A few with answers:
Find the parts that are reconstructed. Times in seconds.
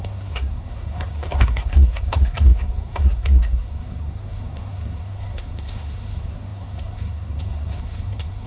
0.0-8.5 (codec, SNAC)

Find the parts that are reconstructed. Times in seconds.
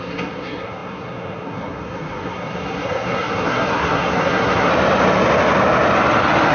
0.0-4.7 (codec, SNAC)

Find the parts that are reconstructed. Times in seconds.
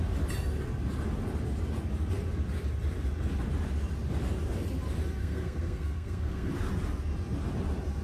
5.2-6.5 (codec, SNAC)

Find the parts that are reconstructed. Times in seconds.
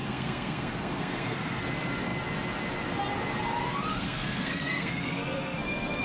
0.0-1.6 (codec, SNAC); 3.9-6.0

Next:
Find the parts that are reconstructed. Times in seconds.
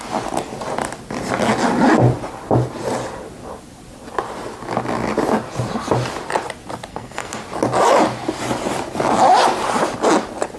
6.9-7.4 (codec, SNAC)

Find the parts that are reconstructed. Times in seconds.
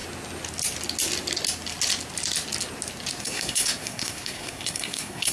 3.2-5.3 (codec, SNAC)